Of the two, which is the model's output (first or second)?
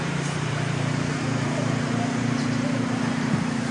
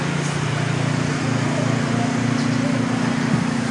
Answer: first